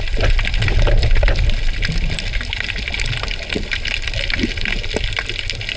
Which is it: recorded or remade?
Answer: recorded